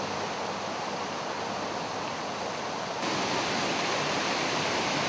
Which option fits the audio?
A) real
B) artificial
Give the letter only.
A